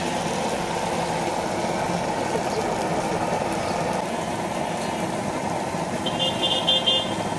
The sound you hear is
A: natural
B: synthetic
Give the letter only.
A